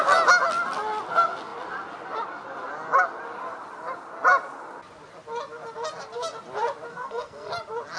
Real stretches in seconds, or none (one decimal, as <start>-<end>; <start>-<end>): 0.0-6.9; 7.5-8.0